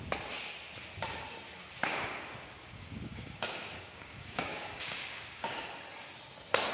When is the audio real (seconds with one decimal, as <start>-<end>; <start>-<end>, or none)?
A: 0.0-1.9; 5.7-6.7